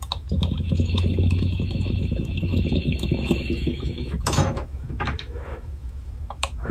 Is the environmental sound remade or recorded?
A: remade